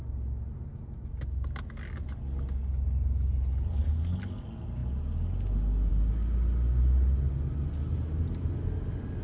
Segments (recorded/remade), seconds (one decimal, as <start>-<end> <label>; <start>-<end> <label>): 0.0-9.2 recorded